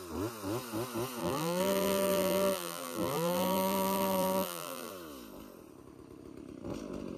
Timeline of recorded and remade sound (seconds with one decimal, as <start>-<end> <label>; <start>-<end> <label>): 0.0-1.2 recorded; 1.2-4.9 remade; 4.9-7.2 recorded